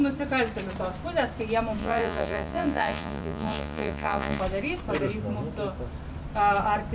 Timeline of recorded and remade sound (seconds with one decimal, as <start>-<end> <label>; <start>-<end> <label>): 0.0-1.8 recorded; 1.8-4.4 remade; 4.4-6.9 recorded